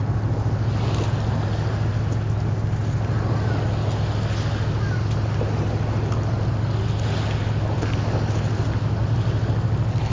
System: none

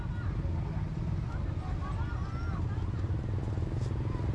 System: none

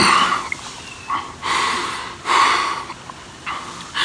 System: none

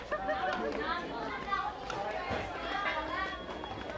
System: none